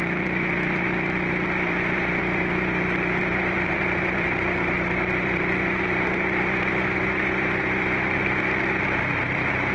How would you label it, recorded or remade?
remade